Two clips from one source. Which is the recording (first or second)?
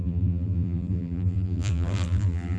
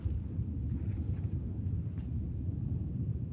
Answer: second